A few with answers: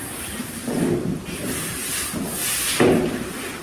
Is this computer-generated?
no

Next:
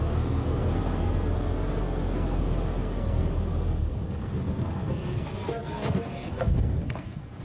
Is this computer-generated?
yes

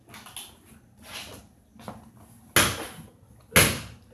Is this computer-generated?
no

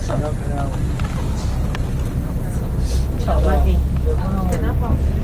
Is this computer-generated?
no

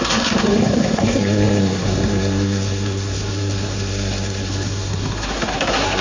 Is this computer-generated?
yes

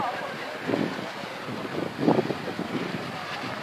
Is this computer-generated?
no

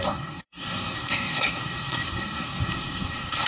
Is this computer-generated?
yes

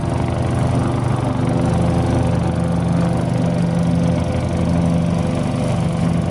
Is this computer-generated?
no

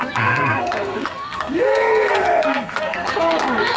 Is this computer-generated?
yes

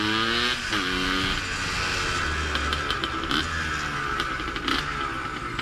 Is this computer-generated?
no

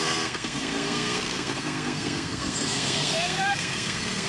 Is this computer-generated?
yes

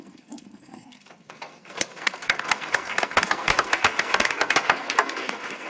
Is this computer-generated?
yes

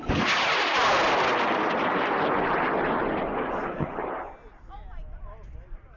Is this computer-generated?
no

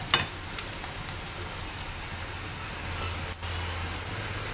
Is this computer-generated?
no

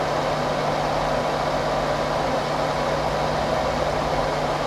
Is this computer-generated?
no